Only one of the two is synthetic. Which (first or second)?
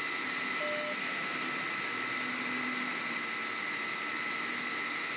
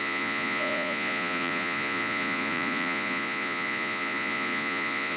second